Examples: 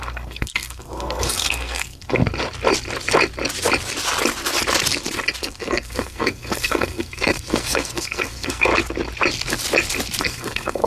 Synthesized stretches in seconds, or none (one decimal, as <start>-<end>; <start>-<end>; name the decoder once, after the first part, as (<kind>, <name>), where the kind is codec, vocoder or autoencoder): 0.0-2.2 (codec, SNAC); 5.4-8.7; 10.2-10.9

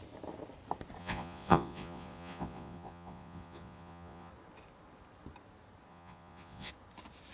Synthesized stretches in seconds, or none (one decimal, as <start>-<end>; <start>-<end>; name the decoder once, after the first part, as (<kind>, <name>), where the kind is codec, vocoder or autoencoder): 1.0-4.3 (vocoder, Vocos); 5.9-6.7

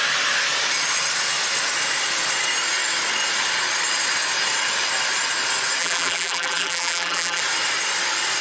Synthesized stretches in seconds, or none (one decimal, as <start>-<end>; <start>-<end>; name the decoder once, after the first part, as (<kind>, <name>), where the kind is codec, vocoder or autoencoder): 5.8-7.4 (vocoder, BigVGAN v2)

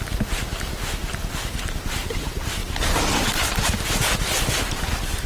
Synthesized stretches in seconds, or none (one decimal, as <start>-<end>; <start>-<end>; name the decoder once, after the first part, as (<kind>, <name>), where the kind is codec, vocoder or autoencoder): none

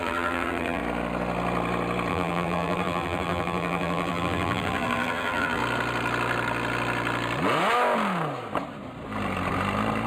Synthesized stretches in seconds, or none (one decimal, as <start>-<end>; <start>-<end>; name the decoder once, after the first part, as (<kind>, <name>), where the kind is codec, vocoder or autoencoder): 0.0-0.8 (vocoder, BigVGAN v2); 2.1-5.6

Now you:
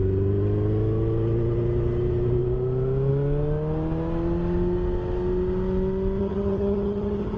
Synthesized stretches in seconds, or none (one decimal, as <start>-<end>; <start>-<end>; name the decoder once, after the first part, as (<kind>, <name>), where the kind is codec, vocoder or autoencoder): 6.2-7.4 (vocoder, HiFi-GAN)